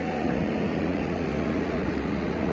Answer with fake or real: fake